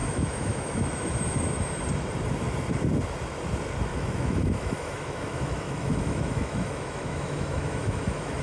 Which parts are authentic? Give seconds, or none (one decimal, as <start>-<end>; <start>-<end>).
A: 1.6-3.9